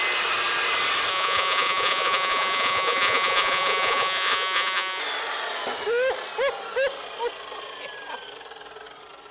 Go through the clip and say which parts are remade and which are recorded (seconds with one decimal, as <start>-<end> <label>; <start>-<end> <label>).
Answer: 0.0-1.1 recorded; 1.1-5.0 remade; 5.0-9.3 recorded